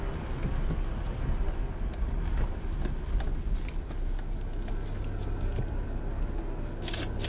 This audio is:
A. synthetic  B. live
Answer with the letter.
B